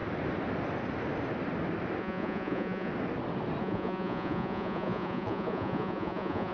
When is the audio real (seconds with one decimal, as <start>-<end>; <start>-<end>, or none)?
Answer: 0.0-2.0; 2.9-3.6